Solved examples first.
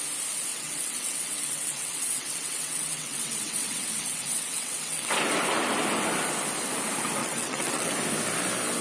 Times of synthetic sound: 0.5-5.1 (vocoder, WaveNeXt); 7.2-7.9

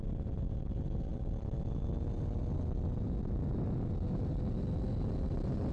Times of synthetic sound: none

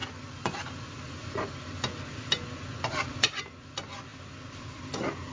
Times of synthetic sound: none

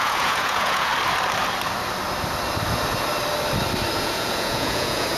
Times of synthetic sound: 0.0-0.9 (vocoder, Vocos); 4.0-5.2

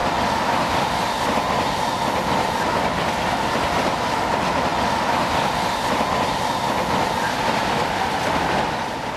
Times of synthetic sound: none

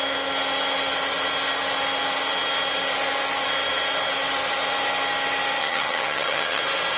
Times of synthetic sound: 5.6-6.6 (vocoder, HiFi-GAN)

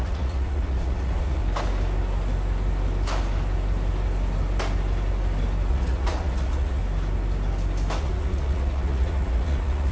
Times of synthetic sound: 0.0-1.4 (vocoder, Vocos); 5.7-6.8; 8.0-9.9